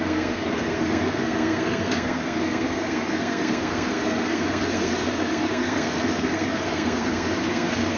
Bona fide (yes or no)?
no